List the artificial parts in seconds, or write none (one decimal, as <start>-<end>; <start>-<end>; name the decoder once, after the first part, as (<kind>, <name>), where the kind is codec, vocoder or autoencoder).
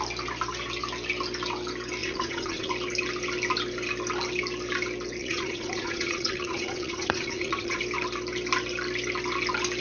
2.0-2.7 (vocoder, Vocos); 5.2-7.8